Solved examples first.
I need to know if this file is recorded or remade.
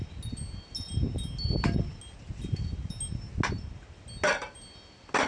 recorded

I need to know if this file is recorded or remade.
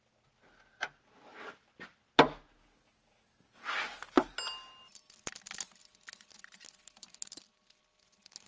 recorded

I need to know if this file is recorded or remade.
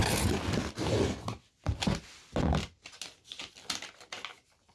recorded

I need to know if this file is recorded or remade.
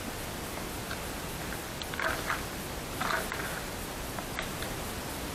recorded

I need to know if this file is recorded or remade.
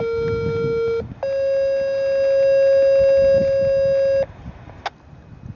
recorded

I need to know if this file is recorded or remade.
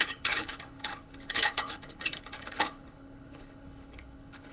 remade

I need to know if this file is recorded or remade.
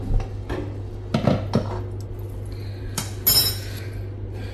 recorded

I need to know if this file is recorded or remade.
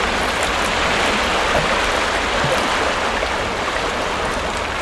recorded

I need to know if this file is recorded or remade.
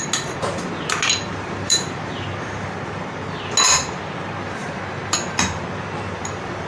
recorded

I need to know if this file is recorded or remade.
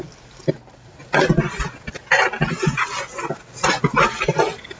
recorded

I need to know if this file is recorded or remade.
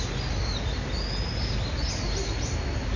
recorded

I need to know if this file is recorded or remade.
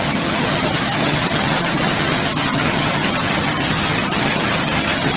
remade